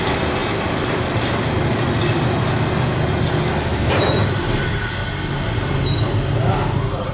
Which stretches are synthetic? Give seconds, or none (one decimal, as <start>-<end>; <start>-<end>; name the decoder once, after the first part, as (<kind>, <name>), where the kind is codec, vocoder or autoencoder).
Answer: 0.4-1.2 (vocoder, BigVGAN v2); 3.7-6.5